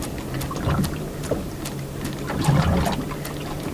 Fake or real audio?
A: real